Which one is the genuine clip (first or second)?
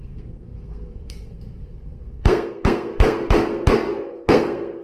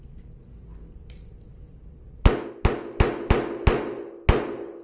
second